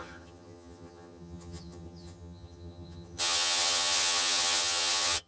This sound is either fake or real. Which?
fake